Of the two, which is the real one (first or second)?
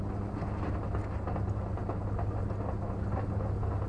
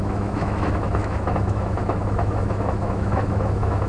first